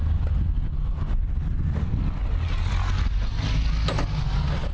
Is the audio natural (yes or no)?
yes